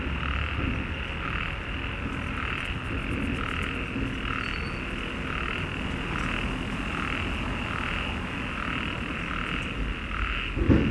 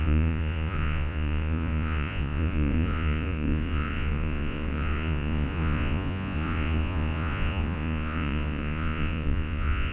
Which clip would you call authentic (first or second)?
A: first